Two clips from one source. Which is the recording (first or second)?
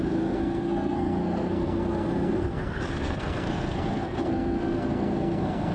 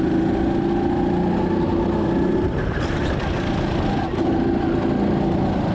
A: second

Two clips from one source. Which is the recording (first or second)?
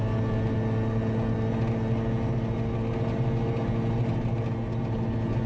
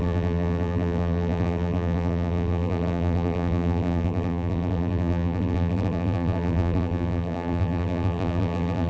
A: first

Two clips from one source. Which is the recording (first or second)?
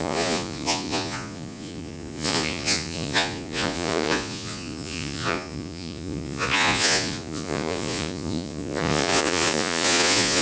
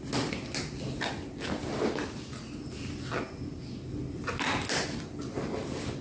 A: second